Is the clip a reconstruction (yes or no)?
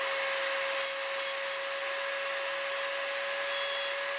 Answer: no